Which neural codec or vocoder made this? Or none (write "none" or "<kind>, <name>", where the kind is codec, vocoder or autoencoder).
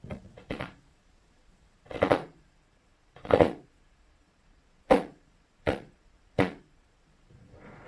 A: vocoder, Vocos